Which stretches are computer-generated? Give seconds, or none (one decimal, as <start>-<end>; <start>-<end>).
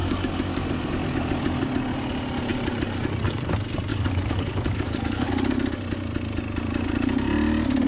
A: 0.0-0.7; 3.9-5.3